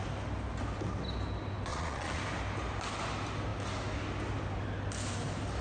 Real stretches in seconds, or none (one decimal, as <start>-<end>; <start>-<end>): 0.0-1.7; 2.2-5.6